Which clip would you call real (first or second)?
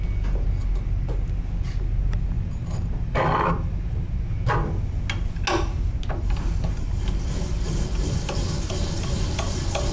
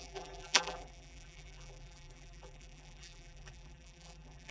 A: first